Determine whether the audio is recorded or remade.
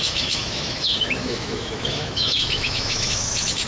remade